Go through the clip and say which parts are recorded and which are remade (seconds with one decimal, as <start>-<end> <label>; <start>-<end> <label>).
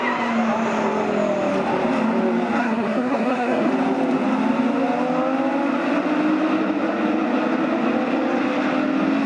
0.0-2.6 recorded; 2.6-3.7 remade; 3.7-9.3 recorded